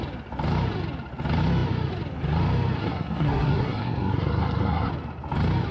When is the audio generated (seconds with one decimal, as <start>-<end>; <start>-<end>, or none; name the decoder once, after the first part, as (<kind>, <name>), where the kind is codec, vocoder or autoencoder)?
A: 2.8-4.9 (codec, SNAC)